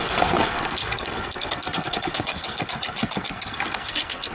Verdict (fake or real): fake